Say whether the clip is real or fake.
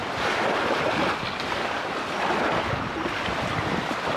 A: real